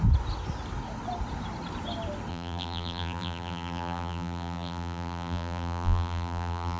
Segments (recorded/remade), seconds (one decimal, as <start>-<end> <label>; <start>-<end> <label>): 0.0-2.3 recorded; 2.3-6.8 remade